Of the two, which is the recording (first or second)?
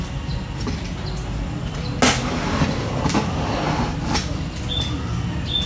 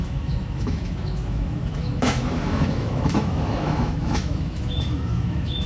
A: first